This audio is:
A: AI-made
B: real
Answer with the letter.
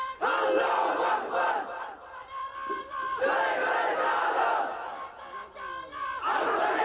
A